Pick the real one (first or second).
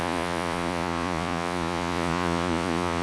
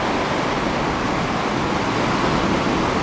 second